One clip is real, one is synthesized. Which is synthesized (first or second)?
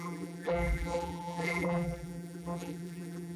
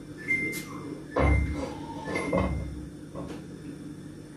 first